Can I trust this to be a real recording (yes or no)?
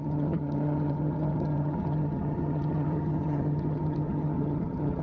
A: no